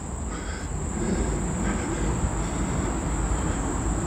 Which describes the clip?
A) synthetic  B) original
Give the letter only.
B